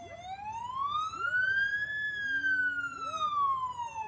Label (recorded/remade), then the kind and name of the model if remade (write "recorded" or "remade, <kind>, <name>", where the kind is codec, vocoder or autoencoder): recorded